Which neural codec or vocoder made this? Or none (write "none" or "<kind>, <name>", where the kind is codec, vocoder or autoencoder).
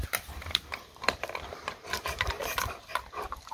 vocoder, BigVGAN v2